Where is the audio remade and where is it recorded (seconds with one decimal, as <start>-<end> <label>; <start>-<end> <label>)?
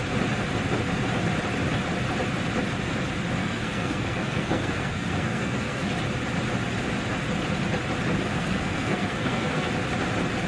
0.0-3.4 recorded; 3.4-5.9 remade; 5.9-8.3 recorded; 8.3-9.7 remade; 9.7-10.5 recorded